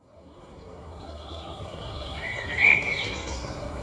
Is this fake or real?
fake